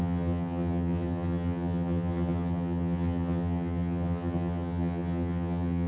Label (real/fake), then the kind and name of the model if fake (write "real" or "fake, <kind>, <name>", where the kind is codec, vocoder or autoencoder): fake, vocoder, HiFi-GAN